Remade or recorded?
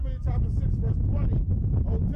recorded